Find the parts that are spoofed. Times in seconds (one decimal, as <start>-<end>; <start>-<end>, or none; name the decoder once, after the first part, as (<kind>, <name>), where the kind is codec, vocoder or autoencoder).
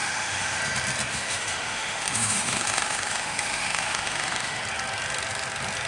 0.0-0.6 (autoencoder, DAC-VAE); 1.1-4.6